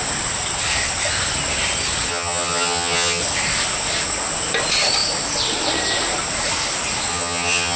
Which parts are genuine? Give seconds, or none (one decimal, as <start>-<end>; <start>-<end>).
0.0-2.1; 3.2-7.1